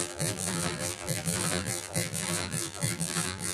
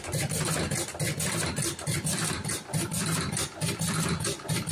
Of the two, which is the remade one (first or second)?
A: first